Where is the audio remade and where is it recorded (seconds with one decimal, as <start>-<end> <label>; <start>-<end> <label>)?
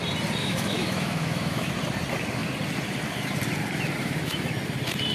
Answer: 0.0-0.4 recorded; 0.4-1.7 remade; 1.7-4.0 recorded; 4.0-4.5 remade; 4.5-5.1 recorded